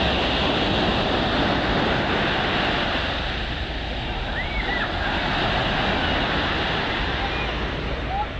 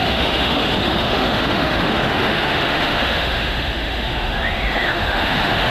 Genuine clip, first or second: first